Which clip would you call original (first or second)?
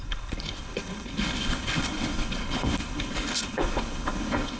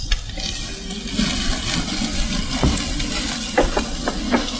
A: second